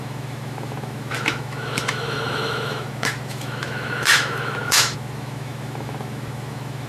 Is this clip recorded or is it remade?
remade